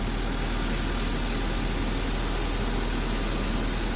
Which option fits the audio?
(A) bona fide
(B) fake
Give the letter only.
A